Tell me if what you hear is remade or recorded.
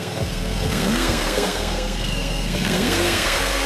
remade